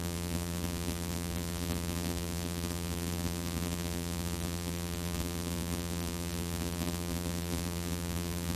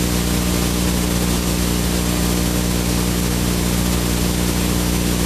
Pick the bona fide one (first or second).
second